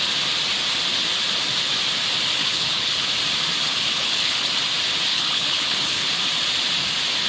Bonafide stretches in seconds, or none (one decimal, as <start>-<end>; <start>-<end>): 0.0-2.4; 3.1-3.6; 4.5-5.1; 6.1-7.3